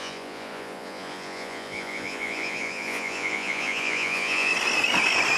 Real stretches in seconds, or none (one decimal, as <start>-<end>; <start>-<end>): 4.5-5.4